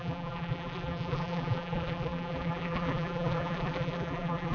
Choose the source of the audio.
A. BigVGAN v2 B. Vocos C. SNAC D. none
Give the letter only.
A